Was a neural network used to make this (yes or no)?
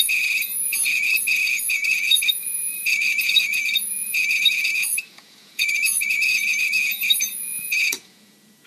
yes